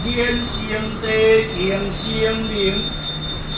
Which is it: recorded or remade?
recorded